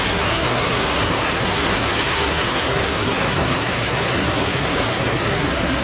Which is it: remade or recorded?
remade